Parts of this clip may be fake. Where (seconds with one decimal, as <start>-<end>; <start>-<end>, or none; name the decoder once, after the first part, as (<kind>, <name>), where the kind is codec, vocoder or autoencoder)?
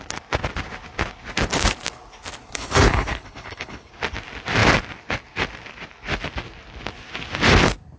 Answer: 2.5-3.9 (codec, HILCodec)